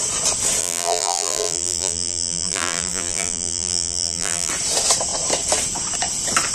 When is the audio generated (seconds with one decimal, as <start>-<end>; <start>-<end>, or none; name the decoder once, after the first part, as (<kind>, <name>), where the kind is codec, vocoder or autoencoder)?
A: 0.6-4.5 (vocoder, BigVGAN v2)